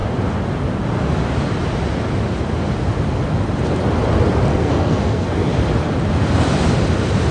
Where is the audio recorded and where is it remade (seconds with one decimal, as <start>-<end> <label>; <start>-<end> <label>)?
0.0-4.5 recorded; 4.5-5.5 remade; 5.5-7.3 recorded